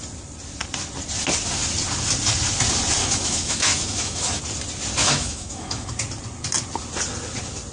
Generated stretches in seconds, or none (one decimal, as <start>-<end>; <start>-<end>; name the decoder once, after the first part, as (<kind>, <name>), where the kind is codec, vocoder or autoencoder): 3.0-4.4 (autoencoder, DAC-VAE); 5.0-5.9